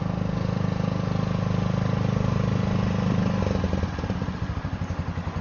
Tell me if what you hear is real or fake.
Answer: real